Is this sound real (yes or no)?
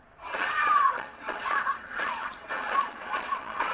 no